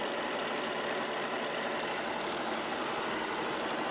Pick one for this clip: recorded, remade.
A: recorded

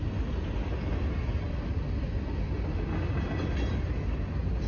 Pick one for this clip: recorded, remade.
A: recorded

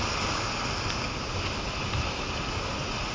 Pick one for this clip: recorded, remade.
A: recorded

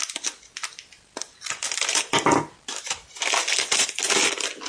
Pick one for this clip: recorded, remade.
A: recorded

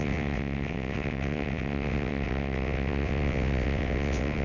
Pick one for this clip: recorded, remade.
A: remade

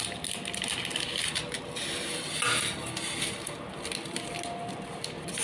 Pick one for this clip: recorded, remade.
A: recorded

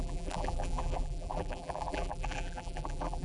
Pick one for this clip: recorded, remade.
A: remade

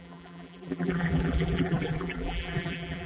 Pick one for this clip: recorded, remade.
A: remade